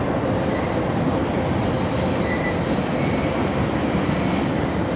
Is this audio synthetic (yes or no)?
no